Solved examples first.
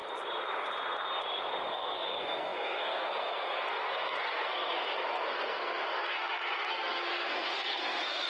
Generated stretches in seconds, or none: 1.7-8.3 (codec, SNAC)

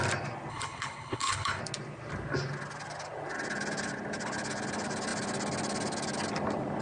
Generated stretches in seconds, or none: 0.5-1.6 (codec, HILCodec)

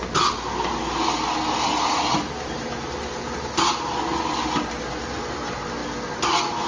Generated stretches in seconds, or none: none